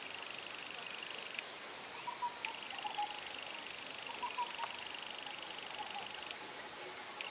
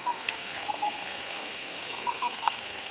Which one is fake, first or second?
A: second